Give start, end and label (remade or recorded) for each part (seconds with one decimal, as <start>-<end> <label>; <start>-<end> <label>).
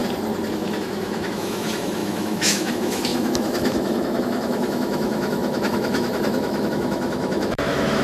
0.0-0.5 recorded; 0.5-8.0 remade